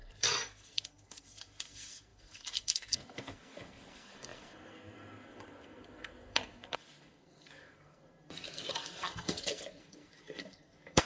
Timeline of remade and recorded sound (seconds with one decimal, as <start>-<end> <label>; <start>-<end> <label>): 0.0-11.1 remade